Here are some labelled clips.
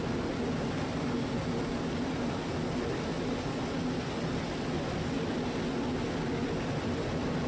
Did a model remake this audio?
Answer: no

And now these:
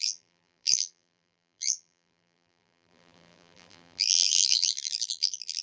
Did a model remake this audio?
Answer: yes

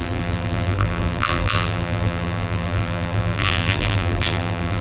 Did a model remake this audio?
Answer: yes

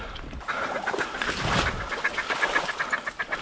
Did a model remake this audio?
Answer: no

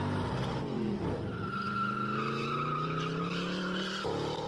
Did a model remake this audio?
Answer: yes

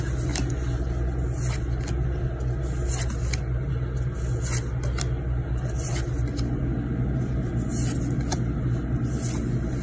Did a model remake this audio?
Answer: no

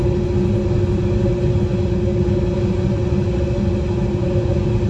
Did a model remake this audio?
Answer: no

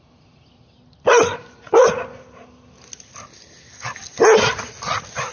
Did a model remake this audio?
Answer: no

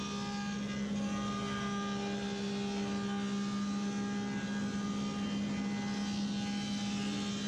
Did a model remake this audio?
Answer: no